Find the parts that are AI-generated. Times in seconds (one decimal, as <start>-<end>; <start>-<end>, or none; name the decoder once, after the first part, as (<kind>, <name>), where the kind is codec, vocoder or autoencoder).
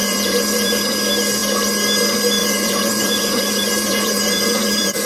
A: 0.0-0.8 (vocoder, Vocos); 2.4-5.1